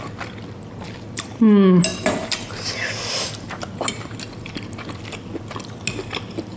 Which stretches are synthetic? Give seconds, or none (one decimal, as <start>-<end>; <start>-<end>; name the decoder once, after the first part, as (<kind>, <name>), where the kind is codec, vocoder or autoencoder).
none